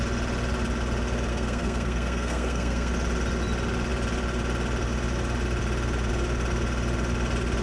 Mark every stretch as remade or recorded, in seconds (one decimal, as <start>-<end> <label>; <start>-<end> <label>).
0.0-1.3 recorded; 1.3-2.9 remade; 2.9-7.6 recorded